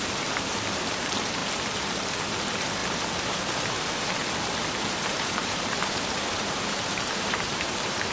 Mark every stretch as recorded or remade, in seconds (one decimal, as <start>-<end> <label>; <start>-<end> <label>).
0.0-1.4 remade; 1.4-2.1 recorded; 2.1-2.8 remade; 2.8-3.3 recorded; 3.3-4.2 remade; 4.2-5.1 recorded; 5.1-8.1 remade

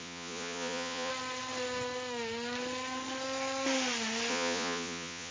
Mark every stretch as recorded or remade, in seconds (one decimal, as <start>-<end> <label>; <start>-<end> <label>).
0.0-1.1 remade; 1.1-4.3 recorded; 4.3-5.3 remade